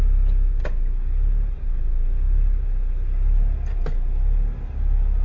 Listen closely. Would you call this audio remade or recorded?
recorded